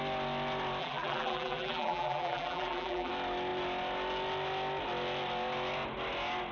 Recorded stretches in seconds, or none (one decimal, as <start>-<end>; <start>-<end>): 0.0-0.8; 3.1-6.5